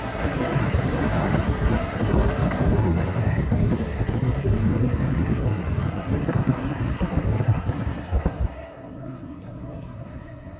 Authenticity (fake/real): fake